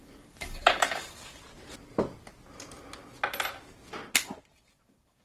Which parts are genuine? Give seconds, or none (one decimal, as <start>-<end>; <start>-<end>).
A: 1.4-4.5